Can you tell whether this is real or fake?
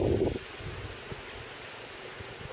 real